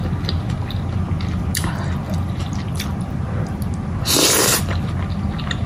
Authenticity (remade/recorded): recorded